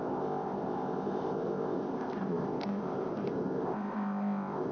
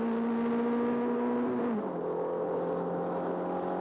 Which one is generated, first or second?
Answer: first